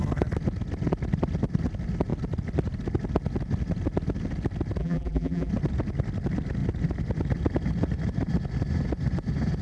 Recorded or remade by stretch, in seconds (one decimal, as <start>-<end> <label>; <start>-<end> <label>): 0.0-4.8 recorded; 4.8-5.5 remade; 5.5-9.6 recorded